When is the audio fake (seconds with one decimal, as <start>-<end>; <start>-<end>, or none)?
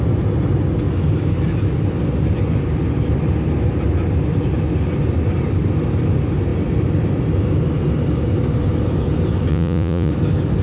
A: 9.5-10.1